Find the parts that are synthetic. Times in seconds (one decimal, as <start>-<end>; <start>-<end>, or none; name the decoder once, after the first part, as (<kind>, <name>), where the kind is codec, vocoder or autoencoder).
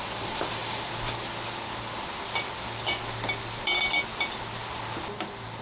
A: none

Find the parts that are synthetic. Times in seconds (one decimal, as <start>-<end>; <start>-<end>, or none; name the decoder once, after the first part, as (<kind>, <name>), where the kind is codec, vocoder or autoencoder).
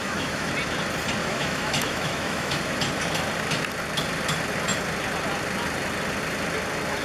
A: 0.0-0.5 (autoencoder, DAC-VAE); 1.2-2.6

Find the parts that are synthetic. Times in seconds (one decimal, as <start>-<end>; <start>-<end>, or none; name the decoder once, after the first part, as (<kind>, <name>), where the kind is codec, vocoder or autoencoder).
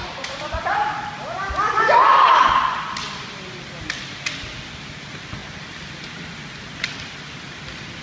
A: 0.0-1.0 (vocoder, BigVGAN v2); 2.1-2.8; 5.4-6.2